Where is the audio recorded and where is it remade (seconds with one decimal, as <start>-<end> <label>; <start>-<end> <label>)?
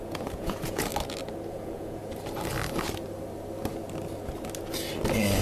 0.0-0.9 remade; 0.9-1.5 recorded; 1.5-2.0 remade; 2.0-5.4 recorded